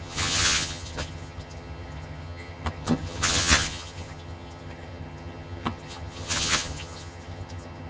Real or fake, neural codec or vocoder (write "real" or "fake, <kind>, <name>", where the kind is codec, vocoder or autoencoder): fake, vocoder, HiFi-GAN